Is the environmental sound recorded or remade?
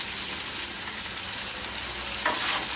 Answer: recorded